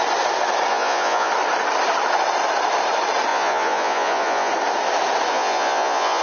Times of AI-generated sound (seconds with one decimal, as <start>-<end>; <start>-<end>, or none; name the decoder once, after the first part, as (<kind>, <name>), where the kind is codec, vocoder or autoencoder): 0.7-1.3 (vocoder, Vocos); 3.3-4.5; 5.3-6.2